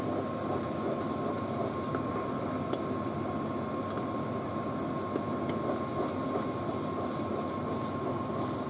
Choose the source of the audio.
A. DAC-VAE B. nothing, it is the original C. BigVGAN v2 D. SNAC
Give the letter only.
B